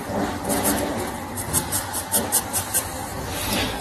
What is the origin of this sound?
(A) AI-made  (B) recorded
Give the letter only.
B